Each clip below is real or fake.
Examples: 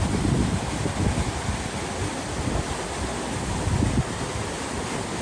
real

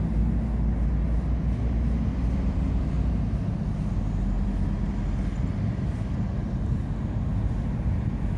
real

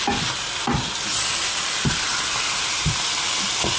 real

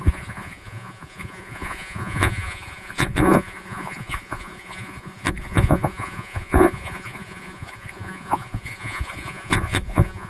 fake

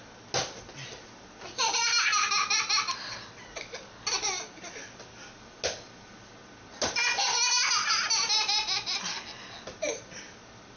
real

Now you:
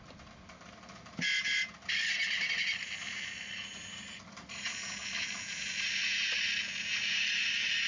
real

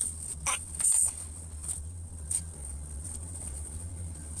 fake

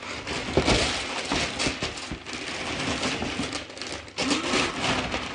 real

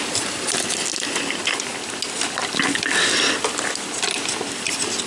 real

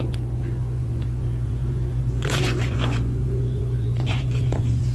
fake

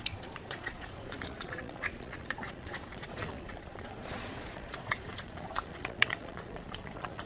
fake